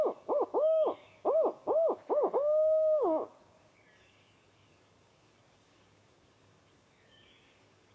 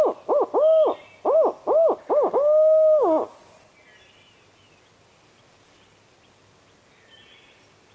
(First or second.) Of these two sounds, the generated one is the first